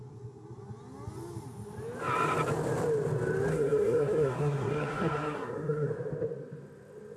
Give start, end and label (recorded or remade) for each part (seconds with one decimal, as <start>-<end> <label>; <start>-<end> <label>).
0.0-3.5 recorded; 3.5-5.9 remade; 5.9-7.2 recorded